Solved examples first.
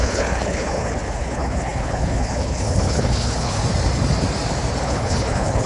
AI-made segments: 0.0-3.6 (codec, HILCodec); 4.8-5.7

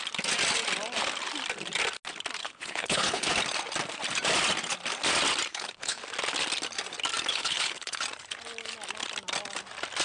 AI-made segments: 2.4-3.3 (codec, HILCodec); 5.5-6.0; 7.3-8.0

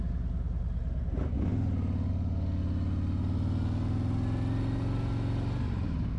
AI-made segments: none